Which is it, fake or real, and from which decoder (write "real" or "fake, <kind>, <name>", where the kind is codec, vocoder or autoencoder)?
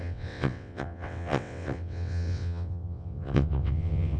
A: fake, vocoder, WaveNeXt